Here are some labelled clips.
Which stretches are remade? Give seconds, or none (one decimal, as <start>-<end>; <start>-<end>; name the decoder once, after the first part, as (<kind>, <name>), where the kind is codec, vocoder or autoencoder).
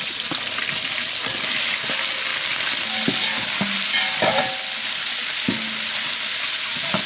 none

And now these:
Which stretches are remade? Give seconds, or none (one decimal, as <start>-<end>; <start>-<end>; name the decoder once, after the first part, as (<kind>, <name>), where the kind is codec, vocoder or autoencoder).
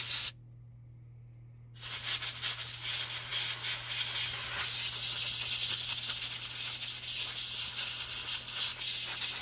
none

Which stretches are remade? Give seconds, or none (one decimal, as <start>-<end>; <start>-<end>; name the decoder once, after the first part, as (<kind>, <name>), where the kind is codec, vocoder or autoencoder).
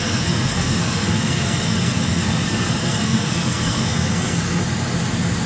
0.0-4.6 (codec, SNAC)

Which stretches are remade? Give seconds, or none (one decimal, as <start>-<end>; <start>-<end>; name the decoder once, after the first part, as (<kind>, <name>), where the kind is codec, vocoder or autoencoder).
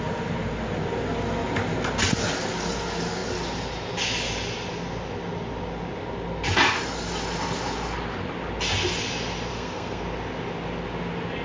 9.5-10.0 (codec, SNAC)